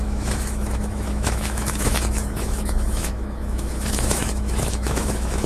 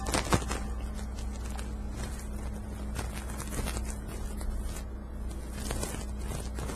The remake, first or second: first